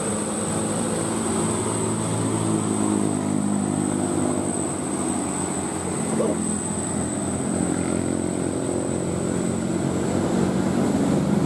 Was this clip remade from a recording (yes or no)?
no